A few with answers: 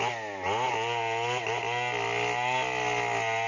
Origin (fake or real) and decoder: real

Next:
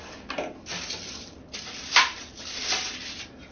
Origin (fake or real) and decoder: real